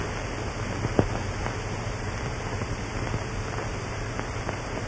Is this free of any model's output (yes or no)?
yes